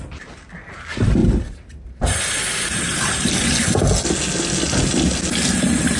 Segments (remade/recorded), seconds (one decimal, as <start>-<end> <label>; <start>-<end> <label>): 0.0-1.2 recorded; 1.2-2.2 remade; 2.2-2.7 recorded; 2.7-3.5 remade; 3.5-6.0 recorded